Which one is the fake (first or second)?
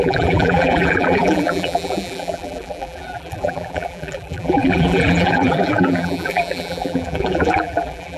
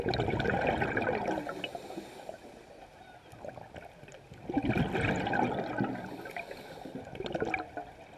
first